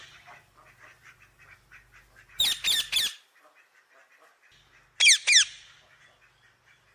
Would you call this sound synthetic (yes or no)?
no